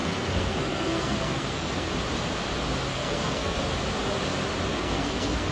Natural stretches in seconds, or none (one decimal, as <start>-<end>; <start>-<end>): 1.9-2.9; 3.6-4.7